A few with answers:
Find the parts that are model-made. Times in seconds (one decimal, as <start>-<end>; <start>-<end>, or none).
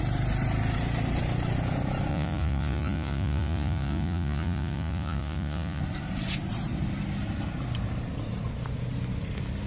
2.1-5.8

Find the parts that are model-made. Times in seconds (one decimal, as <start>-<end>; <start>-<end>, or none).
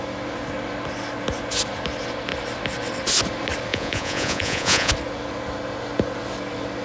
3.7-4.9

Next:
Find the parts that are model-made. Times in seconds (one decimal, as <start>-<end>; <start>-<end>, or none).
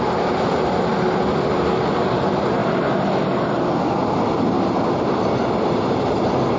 0.0-0.9; 1.5-2.6; 5.0-6.6